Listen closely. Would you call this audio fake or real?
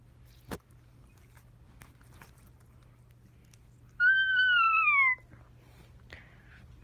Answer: real